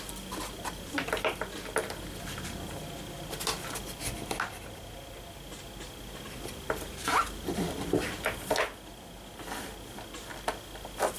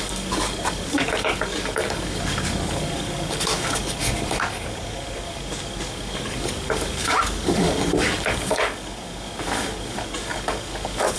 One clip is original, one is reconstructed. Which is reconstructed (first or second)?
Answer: second